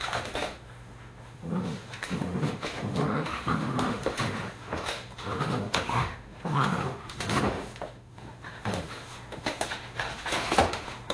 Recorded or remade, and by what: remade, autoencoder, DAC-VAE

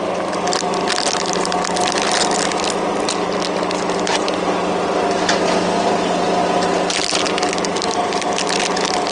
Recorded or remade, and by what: recorded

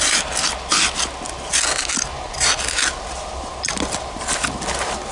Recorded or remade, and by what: recorded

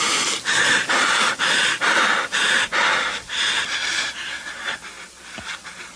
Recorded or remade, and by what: recorded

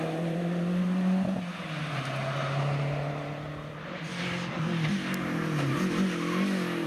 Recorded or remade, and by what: recorded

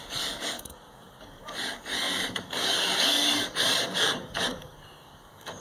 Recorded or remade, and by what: remade, codec, DAC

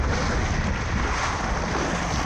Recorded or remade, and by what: recorded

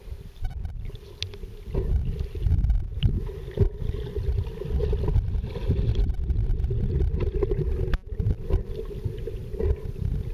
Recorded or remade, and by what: recorded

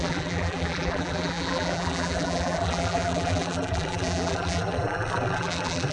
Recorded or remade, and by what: remade, vocoder, BigVGAN v2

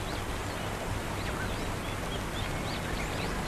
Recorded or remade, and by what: recorded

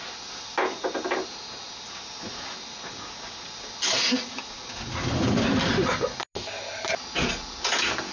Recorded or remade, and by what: recorded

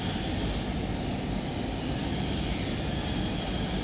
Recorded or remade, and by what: recorded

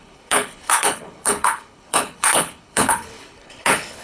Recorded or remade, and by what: remade, codec, HILCodec